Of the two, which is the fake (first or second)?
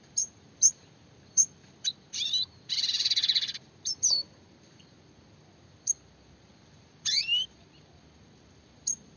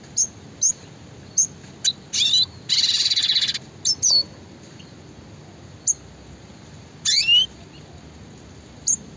first